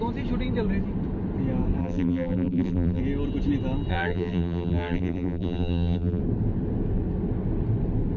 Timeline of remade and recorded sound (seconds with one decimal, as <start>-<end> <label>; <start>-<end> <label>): 0.0-1.8 recorded; 1.8-3.0 remade; 3.0-3.9 recorded; 3.9-6.2 remade; 6.2-8.2 recorded